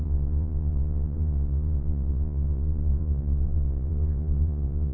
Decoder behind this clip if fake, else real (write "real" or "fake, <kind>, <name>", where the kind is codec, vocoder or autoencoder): fake, vocoder, Vocos